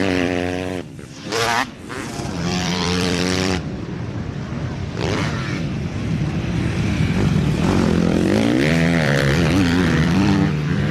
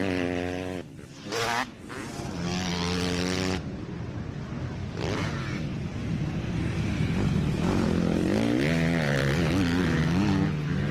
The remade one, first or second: first